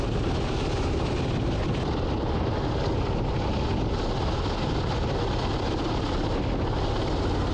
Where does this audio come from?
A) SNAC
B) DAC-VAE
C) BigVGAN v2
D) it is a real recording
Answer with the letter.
D